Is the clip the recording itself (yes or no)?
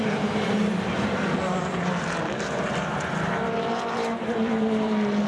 no